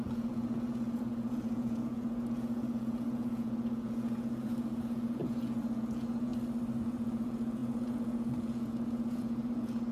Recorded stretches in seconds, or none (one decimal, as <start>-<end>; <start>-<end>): 6.3-6.8